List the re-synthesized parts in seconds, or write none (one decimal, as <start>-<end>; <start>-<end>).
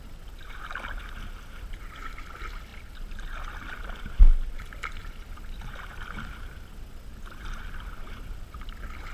none